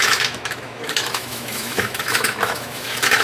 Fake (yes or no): yes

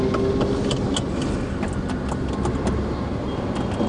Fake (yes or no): no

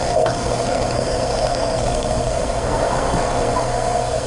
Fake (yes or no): yes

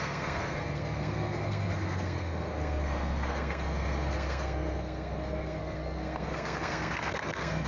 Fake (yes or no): yes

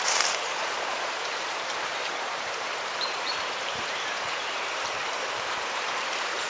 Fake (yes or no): yes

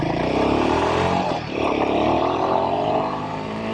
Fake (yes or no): yes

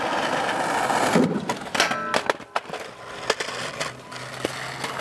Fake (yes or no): no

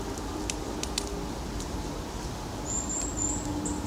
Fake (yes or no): no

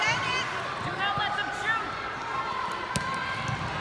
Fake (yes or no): no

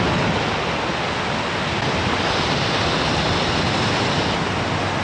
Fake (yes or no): no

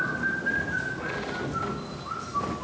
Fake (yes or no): no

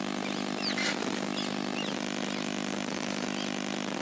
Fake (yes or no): no